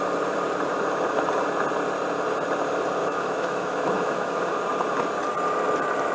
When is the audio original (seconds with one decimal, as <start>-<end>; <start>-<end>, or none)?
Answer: 0.0-3.0; 4.6-6.1